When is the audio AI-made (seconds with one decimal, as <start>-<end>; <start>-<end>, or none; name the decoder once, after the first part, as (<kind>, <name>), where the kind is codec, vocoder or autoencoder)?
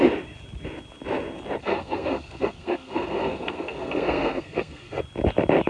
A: 1.6-5.0 (codec, SNAC)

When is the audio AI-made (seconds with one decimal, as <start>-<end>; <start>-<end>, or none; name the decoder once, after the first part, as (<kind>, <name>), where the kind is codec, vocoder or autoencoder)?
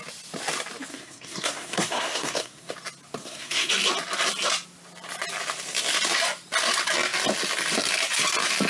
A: 0.9-2.7 (codec, SNAC); 3.2-3.7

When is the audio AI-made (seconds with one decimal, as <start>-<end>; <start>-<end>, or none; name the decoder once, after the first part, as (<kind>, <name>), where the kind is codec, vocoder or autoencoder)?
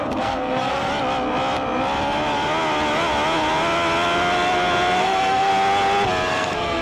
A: 0.0-0.9 (codec, SNAC); 5.0-5.5; 6.3-6.8